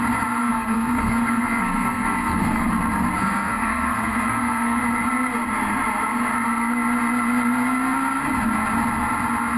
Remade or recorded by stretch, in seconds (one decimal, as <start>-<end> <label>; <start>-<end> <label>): 0.0-0.4 recorded; 0.4-2.7 remade; 2.7-3.2 recorded; 3.2-4.8 remade; 4.8-9.6 recorded